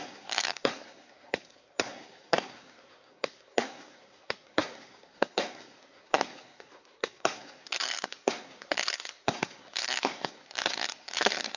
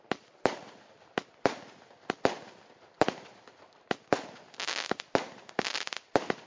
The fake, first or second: first